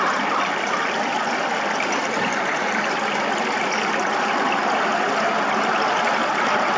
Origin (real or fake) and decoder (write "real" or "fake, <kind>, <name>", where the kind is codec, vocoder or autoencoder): real